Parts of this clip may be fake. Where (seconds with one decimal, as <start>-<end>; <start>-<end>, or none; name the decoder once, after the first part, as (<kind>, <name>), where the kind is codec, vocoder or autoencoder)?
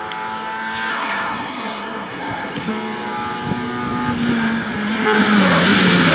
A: 0.9-2.7 (codec, SNAC)